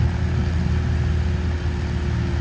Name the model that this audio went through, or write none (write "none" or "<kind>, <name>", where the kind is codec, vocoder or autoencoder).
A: none